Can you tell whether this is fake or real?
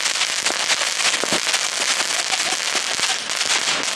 real